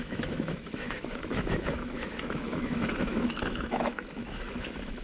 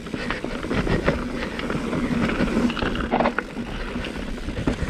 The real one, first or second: second